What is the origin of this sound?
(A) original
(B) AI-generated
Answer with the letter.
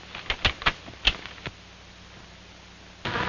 A